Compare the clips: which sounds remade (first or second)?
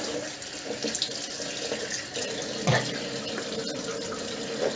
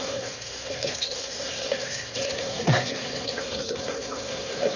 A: second